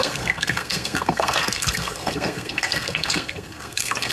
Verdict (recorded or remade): remade